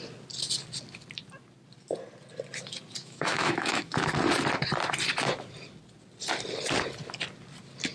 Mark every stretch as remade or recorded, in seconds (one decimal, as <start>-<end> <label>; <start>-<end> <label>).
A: 0.0-3.0 recorded; 3.0-4.1 remade; 4.1-7.9 recorded